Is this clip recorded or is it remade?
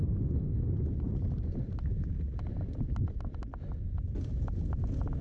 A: recorded